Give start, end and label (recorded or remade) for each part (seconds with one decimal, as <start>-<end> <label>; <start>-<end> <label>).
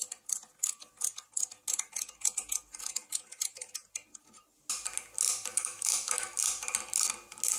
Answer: 0.0-5.5 recorded; 5.5-6.4 remade; 6.4-7.6 recorded